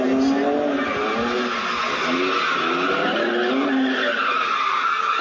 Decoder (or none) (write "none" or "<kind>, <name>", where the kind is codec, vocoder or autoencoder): none